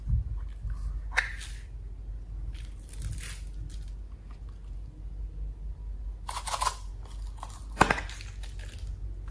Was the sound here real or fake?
real